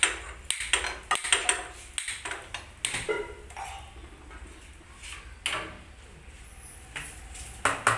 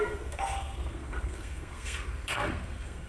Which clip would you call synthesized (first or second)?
second